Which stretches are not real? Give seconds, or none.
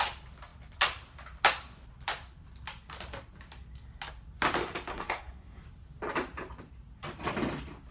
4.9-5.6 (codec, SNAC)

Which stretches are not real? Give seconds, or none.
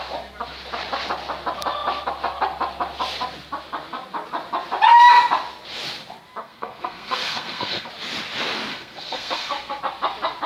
6.4-7.9 (codec, SNAC); 8.7-9.8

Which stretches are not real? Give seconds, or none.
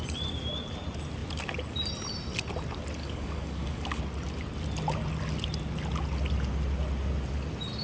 3.0-4.0 (codec, DAC)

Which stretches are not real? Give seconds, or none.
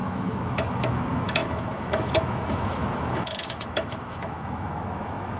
0.0-5.4 (autoencoder, DAC-VAE)